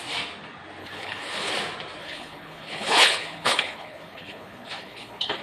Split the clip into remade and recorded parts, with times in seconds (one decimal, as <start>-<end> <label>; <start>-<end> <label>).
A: 0.0-0.8 recorded; 0.8-1.5 remade; 1.5-2.0 recorded; 2.0-5.4 remade